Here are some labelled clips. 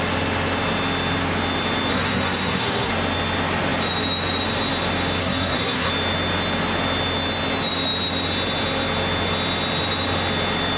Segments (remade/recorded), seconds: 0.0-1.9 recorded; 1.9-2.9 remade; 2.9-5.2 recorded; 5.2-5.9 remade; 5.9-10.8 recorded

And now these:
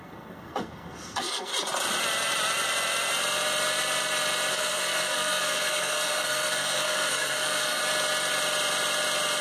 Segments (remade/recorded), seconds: 0.0-1.5 remade; 1.5-4.5 recorded; 4.5-7.8 remade; 7.8-9.4 recorded

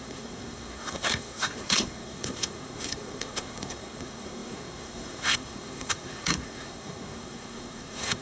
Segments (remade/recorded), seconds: 0.0-8.2 remade

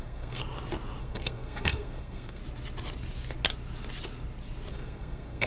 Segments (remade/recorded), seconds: 0.0-0.4 remade; 0.4-1.0 recorded; 1.0-2.4 remade; 2.4-4.7 recorded; 4.7-5.5 remade

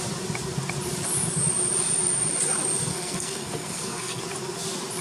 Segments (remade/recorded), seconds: 0.0-2.9 recorded; 2.9-4.2 remade; 4.2-5.0 recorded